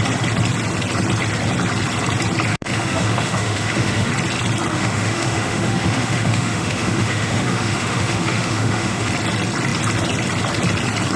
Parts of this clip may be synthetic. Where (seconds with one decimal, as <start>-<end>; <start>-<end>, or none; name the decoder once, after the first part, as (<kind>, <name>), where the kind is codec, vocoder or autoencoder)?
2.5-4.1 (autoencoder, DAC-VAE); 4.7-9.1